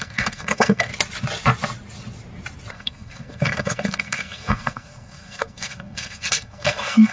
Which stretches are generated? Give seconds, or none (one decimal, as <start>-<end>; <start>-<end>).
0.0-0.9; 2.7-7.1